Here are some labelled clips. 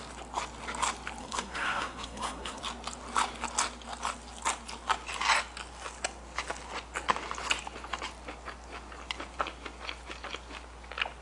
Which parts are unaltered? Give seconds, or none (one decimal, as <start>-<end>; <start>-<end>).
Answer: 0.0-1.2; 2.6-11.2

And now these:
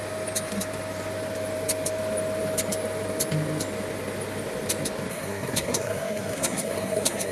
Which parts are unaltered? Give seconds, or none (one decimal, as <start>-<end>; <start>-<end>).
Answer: 0.0-5.1

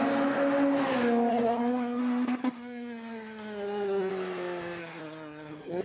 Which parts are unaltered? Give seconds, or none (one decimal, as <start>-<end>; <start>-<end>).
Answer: 0.0-1.3; 2.0-2.4; 4.1-4.8